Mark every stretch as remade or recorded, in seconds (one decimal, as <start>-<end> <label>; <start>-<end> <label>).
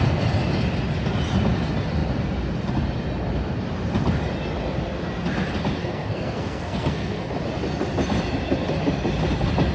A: 0.0-5.8 recorded; 5.8-7.3 remade; 7.3-9.7 recorded